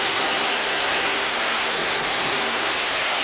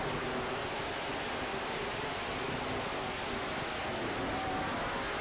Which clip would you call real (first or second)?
second